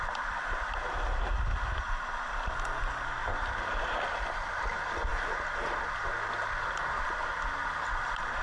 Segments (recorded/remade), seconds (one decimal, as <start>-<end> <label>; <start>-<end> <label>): 0.0-8.4 recorded